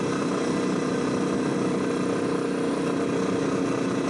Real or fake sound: real